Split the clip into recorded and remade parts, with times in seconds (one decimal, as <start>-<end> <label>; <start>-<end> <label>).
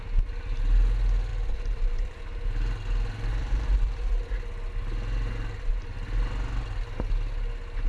0.0-1.3 recorded; 1.3-2.2 remade; 2.2-3.3 recorded; 3.3-4.3 remade; 4.3-7.9 recorded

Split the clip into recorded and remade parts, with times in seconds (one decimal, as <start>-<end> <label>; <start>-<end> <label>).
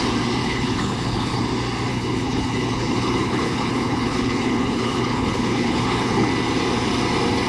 0.0-0.4 recorded; 0.4-1.4 remade; 1.4-1.9 recorded; 1.9-6.3 remade; 6.3-7.5 recorded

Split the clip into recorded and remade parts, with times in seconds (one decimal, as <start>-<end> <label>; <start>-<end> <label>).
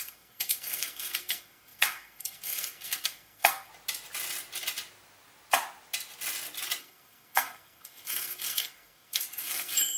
0.0-3.7 remade; 3.7-6.8 recorded; 6.8-10.0 remade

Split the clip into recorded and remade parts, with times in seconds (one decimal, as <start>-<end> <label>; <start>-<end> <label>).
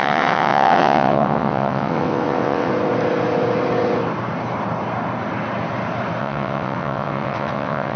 0.0-2.7 remade; 2.7-6.2 recorded; 6.2-8.0 remade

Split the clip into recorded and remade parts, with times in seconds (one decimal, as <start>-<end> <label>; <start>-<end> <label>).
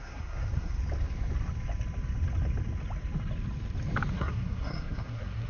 0.0-0.8 remade; 0.8-4.1 recorded; 4.1-5.5 remade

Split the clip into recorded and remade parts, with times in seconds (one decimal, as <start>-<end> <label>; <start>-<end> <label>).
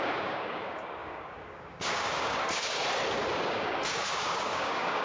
0.0-2.8 remade; 2.8-3.5 recorded; 3.5-5.0 remade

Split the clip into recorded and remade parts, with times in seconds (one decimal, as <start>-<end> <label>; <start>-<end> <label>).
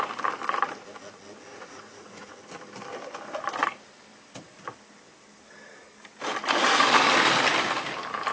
0.0-1.5 recorded; 1.5-2.3 remade; 2.3-8.3 recorded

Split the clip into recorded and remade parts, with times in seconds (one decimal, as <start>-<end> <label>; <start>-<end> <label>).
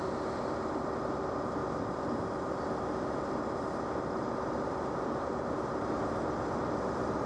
0.0-7.3 recorded